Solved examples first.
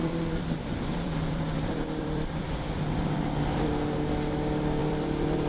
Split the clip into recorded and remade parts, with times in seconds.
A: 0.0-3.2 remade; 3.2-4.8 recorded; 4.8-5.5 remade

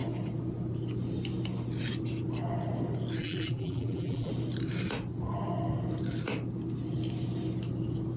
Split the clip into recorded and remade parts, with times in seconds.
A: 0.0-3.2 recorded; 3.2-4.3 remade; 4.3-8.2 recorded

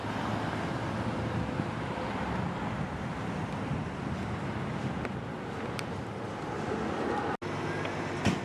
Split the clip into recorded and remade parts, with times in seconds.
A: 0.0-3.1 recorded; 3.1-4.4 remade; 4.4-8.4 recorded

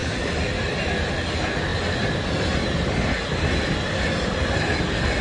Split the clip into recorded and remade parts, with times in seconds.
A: 0.0-0.7 remade; 0.7-5.2 recorded

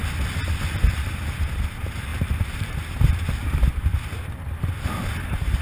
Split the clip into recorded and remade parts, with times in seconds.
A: 0.0-0.9 recorded; 0.9-3.9 remade; 3.9-5.1 recorded; 5.1-5.6 remade

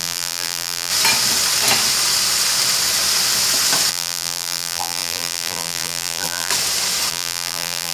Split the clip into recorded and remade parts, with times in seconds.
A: 0.0-0.9 remade; 0.9-3.9 recorded; 3.9-6.5 remade; 6.5-7.1 recorded; 7.1-7.9 remade

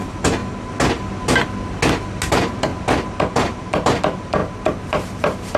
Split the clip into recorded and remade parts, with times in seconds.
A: 0.0-0.4 remade; 0.4-2.3 recorded; 2.3-2.7 remade; 2.7-3.3 recorded; 3.3-4.4 remade; 4.4-4.9 recorded; 4.9-5.6 remade